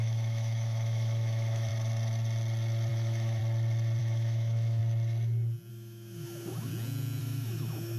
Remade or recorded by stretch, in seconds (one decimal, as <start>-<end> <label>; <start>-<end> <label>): 0.0-1.7 remade; 1.7-2.9 recorded; 2.9-3.4 remade; 3.4-4.0 recorded; 4.0-4.8 remade; 4.8-5.7 recorded; 5.7-6.7 remade; 6.7-7.2 recorded; 7.2-8.0 remade